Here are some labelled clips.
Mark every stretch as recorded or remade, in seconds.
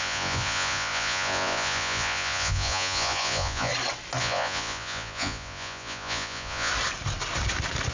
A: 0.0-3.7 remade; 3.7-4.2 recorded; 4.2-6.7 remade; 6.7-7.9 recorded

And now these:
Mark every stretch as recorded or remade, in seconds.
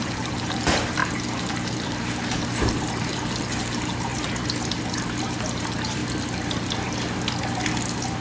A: 0.0-4.1 remade; 4.1-5.4 recorded; 5.4-6.0 remade; 6.0-8.2 recorded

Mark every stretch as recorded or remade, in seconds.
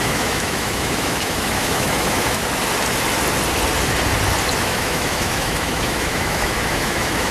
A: 0.0-2.4 remade; 2.4-4.6 recorded; 4.6-7.3 remade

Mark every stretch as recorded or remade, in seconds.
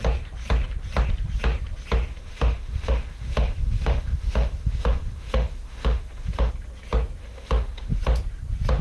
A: 0.0-2.1 recorded; 2.1-6.5 remade; 6.5-7.2 recorded; 7.2-8.0 remade; 8.0-8.8 recorded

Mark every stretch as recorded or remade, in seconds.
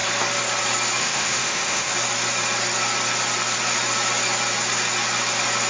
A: 0.0-1.0 recorded; 1.0-1.9 remade; 1.9-5.7 recorded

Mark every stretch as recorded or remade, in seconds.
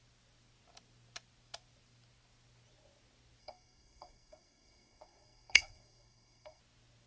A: 0.0-3.4 recorded; 3.4-6.6 remade; 6.6-7.1 recorded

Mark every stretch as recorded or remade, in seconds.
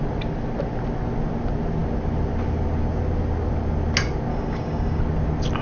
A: 0.0-4.3 recorded; 4.3-5.0 remade; 5.0-5.6 recorded